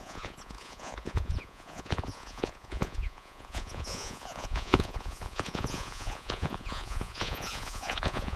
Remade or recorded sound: remade